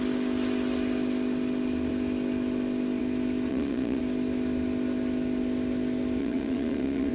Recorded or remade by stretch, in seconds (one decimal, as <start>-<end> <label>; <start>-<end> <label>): 0.0-3.5 recorded; 3.5-4.0 remade; 4.0-6.2 recorded; 6.2-7.1 remade